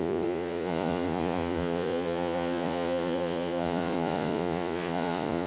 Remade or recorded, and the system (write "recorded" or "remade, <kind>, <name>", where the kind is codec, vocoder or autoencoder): remade, vocoder, Vocos